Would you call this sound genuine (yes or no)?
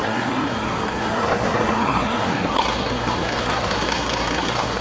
no